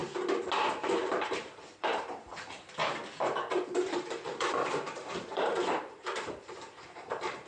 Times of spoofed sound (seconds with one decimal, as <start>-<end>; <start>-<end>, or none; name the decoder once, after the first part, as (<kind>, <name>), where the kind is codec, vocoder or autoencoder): 1.0-7.5 (vocoder, BigVGAN v2)